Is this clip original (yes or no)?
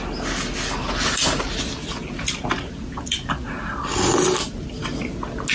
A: yes